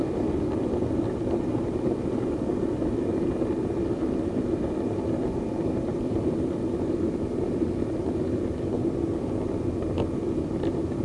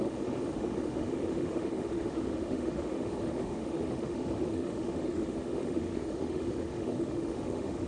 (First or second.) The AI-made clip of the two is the second